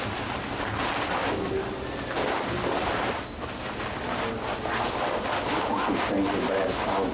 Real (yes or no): yes